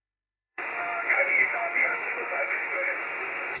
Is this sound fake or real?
fake